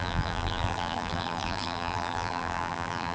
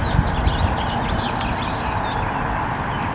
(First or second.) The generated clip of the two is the first